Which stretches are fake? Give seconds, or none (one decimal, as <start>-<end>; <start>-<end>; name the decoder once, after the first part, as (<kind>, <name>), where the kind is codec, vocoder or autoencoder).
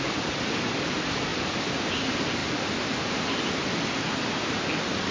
2.4-3.4 (vocoder, BigVGAN v2)